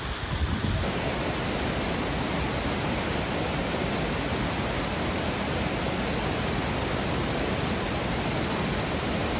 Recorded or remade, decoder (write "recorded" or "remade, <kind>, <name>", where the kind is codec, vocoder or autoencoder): recorded